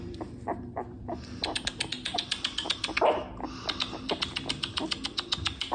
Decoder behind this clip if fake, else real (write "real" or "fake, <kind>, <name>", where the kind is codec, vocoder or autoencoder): real